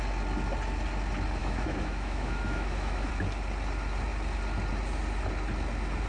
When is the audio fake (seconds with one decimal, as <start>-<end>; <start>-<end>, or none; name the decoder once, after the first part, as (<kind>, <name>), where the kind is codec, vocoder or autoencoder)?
1.4-3.1 (autoencoder, DAC-VAE)